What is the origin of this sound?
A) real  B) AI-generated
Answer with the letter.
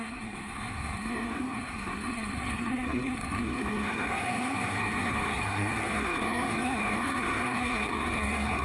B